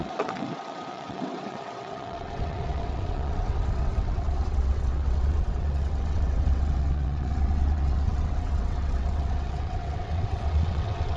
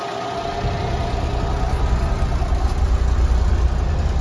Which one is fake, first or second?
first